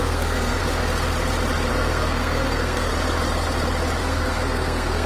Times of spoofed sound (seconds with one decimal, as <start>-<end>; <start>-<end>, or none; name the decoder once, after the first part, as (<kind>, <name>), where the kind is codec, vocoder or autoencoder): 0.0-0.6 (codec, SNAC); 1.7-2.9; 4.0-5.1